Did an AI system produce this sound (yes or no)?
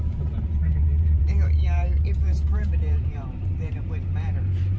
yes